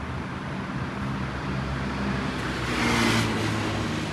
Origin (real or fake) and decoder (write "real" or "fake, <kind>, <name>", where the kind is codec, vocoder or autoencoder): real